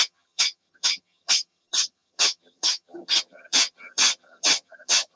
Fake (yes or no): yes